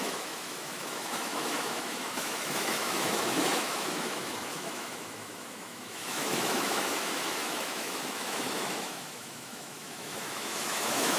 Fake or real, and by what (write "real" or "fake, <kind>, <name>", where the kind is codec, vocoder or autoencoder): fake, autoencoder, DAC-VAE